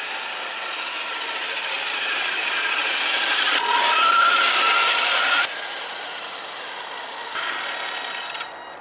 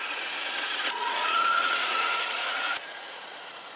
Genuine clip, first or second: first